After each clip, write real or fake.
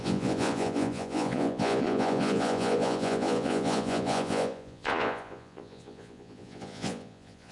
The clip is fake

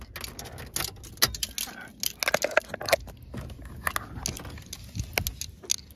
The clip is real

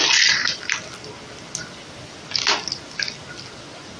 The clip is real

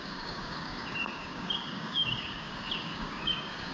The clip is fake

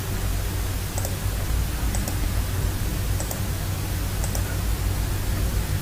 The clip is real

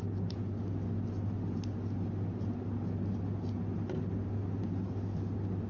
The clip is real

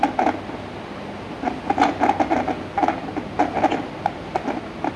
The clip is real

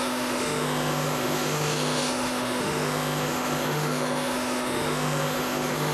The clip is fake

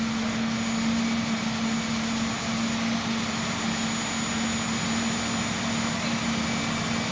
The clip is real